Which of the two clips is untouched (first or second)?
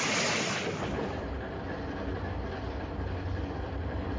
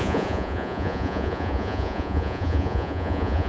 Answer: first